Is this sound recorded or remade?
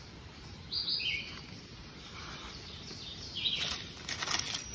recorded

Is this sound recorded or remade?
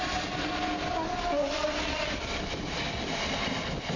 recorded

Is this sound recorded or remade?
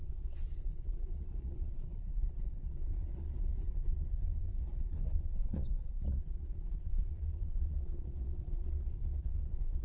remade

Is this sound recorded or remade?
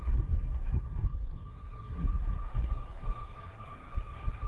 remade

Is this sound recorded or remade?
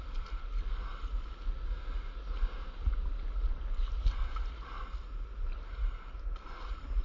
recorded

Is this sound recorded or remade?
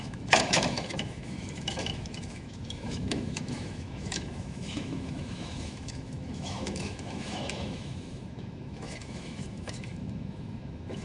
remade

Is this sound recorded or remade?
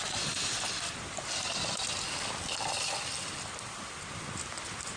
recorded